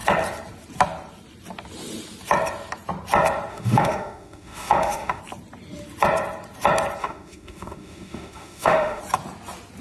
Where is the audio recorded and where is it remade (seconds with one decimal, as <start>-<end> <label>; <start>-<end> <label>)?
0.0-3.5 recorded; 3.5-5.2 remade; 5.2-7.0 recorded; 7.0-9.0 remade; 9.0-9.8 recorded